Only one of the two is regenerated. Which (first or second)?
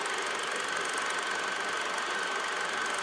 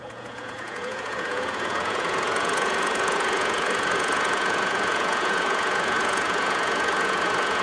second